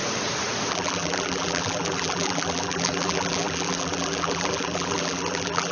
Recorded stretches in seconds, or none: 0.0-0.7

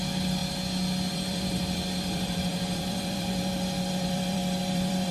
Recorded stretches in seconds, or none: 0.4-1.1